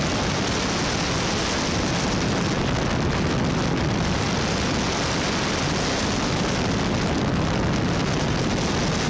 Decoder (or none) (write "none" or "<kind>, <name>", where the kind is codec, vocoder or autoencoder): none